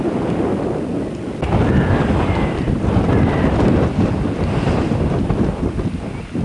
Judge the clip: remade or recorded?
recorded